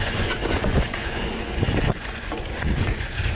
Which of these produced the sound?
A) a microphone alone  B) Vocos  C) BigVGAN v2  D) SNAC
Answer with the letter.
B